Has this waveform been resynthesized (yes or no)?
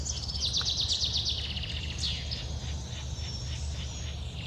no